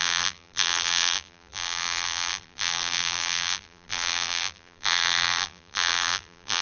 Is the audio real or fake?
fake